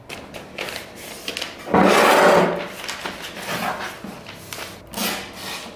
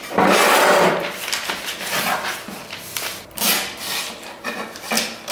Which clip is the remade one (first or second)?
second